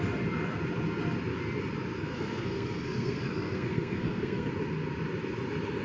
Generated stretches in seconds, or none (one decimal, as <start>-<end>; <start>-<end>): 2.0-4.5